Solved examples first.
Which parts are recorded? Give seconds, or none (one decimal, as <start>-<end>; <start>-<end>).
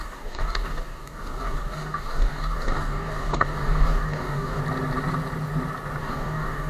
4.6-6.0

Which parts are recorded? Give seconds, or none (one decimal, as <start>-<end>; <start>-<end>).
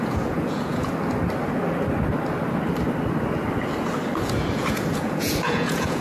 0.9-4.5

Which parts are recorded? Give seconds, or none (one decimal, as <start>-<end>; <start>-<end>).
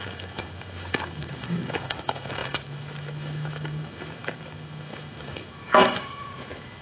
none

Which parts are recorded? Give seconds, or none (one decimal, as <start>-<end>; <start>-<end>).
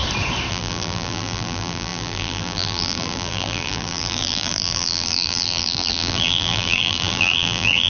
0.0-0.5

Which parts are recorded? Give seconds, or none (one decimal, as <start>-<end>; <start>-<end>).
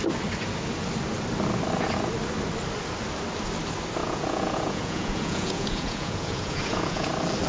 0.0-4.0; 7.1-7.5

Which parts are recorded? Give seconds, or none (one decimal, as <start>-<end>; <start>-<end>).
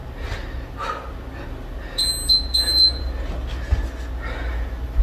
0.0-5.0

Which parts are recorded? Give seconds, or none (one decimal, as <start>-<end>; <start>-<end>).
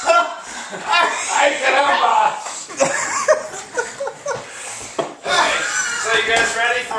0.0-2.1; 2.7-4.9; 5.5-7.0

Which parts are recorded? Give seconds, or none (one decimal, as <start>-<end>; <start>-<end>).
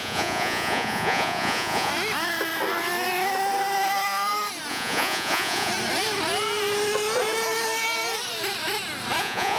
1.9-4.7; 5.7-9.2